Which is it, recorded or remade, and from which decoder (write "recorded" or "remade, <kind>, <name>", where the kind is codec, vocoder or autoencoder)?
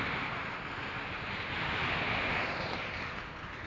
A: recorded